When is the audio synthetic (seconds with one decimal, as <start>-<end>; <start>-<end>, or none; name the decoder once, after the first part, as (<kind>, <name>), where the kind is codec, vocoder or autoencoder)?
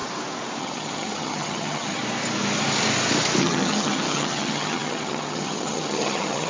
0.6-2.0 (vocoder, HiFi-GAN); 3.4-6.5